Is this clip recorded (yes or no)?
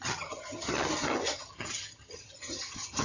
no